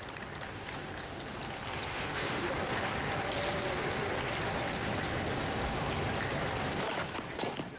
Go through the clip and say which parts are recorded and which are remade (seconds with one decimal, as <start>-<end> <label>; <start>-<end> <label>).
0.0-1.9 recorded; 1.9-2.5 remade; 2.5-7.8 recorded